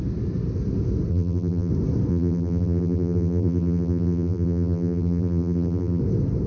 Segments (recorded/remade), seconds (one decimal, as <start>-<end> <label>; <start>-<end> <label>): 0.0-1.1 recorded; 1.1-1.7 remade; 1.7-2.1 recorded; 2.1-6.0 remade; 6.0-6.5 recorded